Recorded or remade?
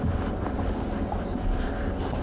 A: recorded